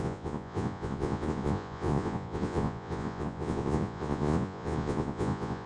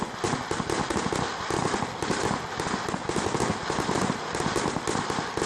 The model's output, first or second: first